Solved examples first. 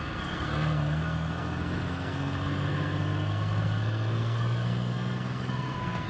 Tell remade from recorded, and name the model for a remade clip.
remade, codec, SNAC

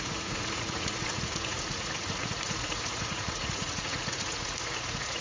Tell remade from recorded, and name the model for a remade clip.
remade, vocoder, Vocos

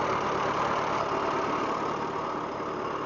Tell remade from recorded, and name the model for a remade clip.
recorded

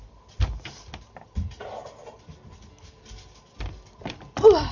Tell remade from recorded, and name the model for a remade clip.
recorded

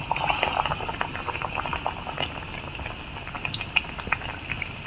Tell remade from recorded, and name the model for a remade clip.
recorded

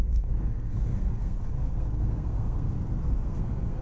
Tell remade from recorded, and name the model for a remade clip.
remade, codec, SNAC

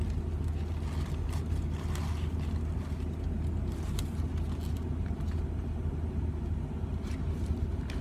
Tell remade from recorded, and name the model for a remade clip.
recorded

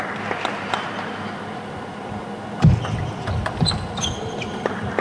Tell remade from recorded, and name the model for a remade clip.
recorded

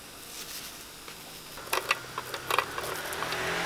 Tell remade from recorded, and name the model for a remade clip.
recorded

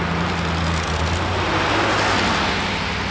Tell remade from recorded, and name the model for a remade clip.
recorded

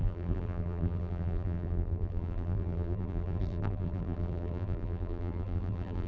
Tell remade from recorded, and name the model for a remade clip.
remade, vocoder, BigVGAN v2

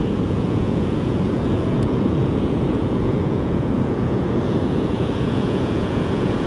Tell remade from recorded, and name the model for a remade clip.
remade, vocoder, Vocos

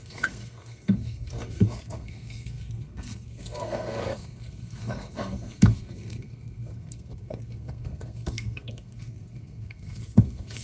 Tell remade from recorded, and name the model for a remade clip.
remade, codec, SNAC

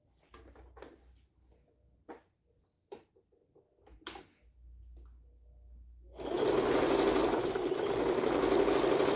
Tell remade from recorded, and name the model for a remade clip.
recorded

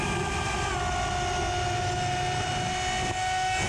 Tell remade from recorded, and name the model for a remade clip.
recorded